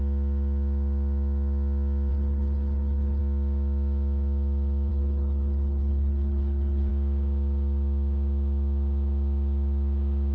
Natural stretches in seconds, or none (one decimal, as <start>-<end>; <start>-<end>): 0.0-2.1; 3.2-4.9; 6.9-10.3

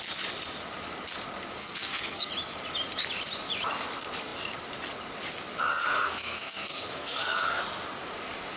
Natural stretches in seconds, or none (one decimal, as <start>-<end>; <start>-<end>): 0.0-1.6; 2.3-5.9; 7.6-8.6

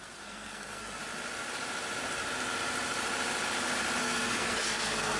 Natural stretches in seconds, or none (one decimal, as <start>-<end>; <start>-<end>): 1.0-4.0

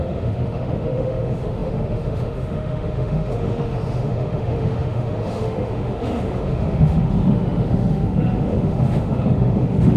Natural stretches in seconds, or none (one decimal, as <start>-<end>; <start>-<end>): none